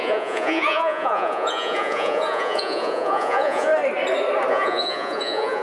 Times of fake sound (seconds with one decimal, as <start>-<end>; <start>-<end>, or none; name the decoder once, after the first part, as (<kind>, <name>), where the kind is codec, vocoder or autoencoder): 0.0-3.7 (vocoder, Vocos); 4.5-5.6